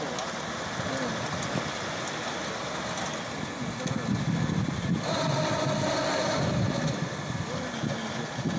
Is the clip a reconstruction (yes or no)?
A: no